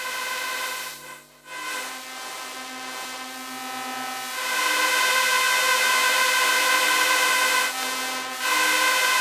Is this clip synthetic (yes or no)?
no